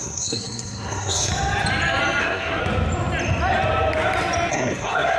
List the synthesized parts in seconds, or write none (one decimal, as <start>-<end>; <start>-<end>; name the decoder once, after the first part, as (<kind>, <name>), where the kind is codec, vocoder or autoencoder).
0.0-1.3 (codec, SNAC); 2.2-2.6; 4.5-5.2